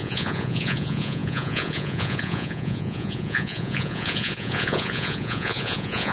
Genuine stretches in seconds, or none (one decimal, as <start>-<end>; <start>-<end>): none